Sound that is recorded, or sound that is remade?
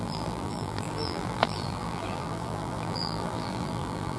remade